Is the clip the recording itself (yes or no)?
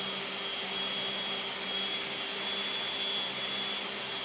yes